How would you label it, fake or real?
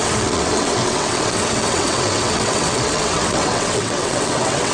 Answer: fake